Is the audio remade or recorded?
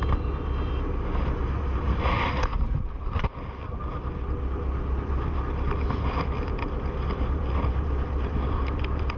recorded